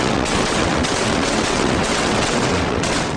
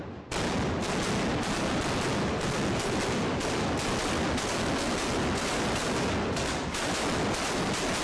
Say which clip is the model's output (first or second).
first